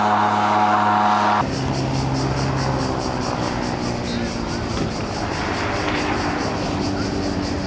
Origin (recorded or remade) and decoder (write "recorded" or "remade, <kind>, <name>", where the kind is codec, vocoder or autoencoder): recorded